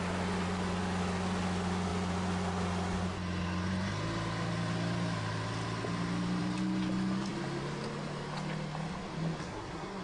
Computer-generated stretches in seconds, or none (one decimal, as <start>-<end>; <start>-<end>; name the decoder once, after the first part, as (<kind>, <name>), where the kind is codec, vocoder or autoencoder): 9.4-10.0 (codec, SNAC)